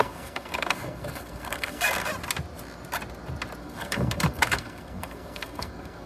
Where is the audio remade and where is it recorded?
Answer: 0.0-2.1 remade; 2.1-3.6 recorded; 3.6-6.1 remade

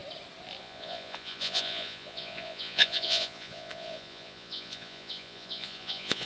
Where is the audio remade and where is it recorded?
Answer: 0.0-0.6 recorded; 0.6-6.3 remade

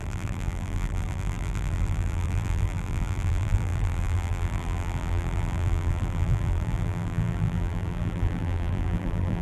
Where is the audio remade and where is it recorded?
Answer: 0.0-9.4 remade